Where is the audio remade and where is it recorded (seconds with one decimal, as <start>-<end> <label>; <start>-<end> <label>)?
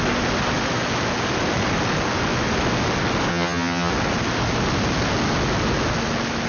0.0-3.3 recorded; 3.3-3.9 remade; 3.9-6.5 recorded